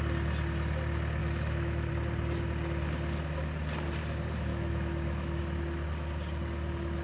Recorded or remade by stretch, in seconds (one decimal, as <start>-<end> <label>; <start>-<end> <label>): 0.0-1.2 recorded; 1.2-1.9 remade; 1.9-4.5 recorded; 4.5-5.4 remade; 5.4-7.0 recorded